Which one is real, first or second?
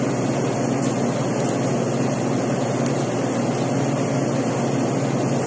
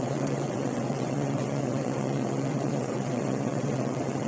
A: first